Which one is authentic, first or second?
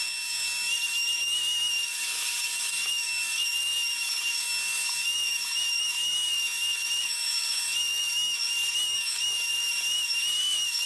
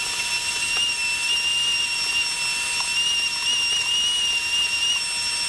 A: second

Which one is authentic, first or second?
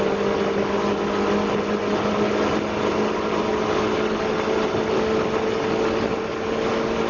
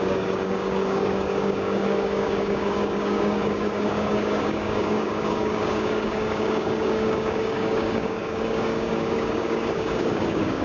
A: first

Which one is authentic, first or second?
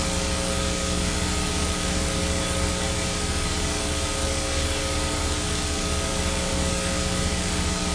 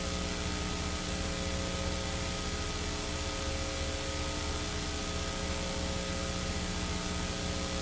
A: second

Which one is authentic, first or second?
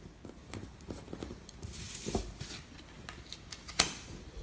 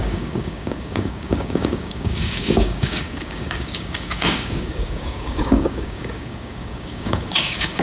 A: first